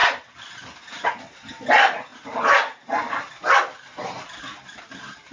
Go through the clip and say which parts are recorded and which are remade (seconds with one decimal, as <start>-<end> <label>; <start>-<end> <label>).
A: 0.0-0.5 remade; 0.5-5.3 recorded